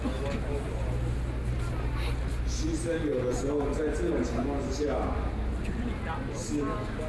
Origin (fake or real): real